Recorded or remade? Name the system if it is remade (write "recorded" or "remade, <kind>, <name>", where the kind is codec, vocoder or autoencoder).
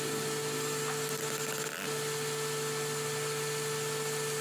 recorded